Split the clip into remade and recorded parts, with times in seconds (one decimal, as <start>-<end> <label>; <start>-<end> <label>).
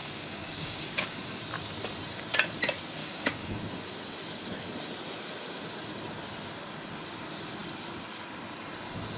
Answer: 0.0-1.4 remade; 1.4-3.0 recorded; 3.0-3.6 remade; 3.6-9.2 recorded